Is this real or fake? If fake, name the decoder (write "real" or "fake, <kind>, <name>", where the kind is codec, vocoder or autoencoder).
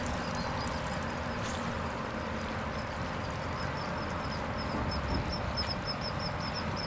real